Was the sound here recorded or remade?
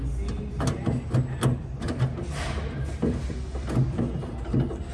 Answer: recorded